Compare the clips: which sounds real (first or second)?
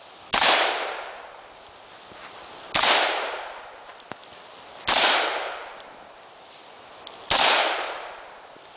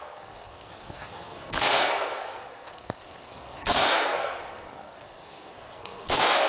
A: first